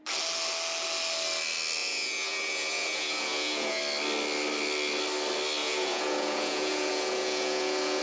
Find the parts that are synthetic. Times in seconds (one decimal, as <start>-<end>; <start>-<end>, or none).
1.8-3.8; 5.6-8.0